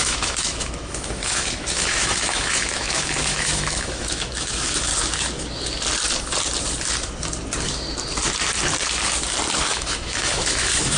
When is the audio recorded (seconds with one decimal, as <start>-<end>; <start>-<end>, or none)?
4.9-9.6